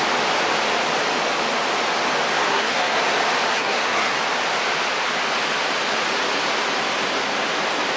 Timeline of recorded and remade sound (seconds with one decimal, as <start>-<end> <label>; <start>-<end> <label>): 0.0-2.5 recorded; 2.5-3.0 remade; 3.0-3.5 recorded; 3.5-4.2 remade; 4.2-8.0 recorded